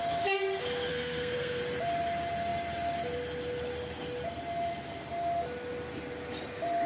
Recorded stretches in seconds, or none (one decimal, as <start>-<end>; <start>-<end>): 0.0-0.9; 1.6-6.9